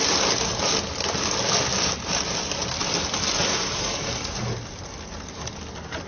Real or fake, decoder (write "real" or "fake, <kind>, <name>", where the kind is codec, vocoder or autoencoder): real